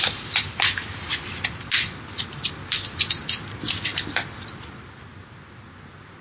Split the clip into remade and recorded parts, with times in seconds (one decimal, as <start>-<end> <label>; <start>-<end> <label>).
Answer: 0.0-6.2 recorded